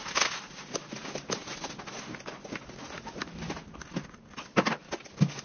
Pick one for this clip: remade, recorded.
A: recorded